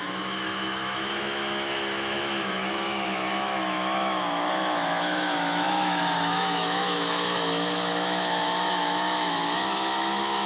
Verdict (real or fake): fake